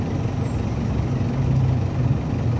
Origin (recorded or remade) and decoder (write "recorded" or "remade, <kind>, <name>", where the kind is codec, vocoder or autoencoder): recorded